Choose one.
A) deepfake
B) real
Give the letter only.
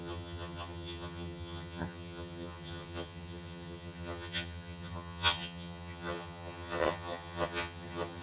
A